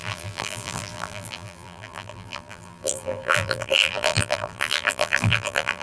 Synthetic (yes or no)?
yes